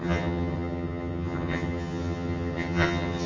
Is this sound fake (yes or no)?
yes